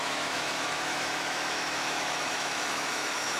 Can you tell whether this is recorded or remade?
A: remade